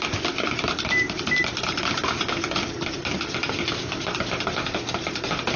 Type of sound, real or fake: real